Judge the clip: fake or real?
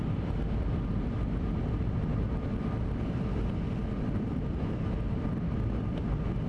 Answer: real